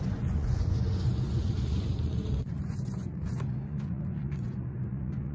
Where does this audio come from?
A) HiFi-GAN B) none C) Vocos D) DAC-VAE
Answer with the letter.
C